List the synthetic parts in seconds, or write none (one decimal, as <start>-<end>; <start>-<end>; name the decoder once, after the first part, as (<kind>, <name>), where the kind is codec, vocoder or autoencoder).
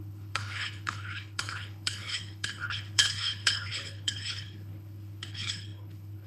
0.0-6.3 (codec, HILCodec)